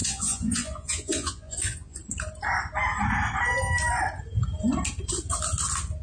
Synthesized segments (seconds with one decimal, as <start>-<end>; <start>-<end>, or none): 0.0-2.0